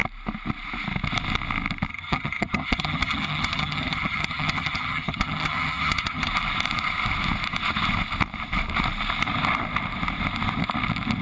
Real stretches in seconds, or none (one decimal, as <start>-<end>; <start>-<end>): 0.0-1.9; 6.3-11.2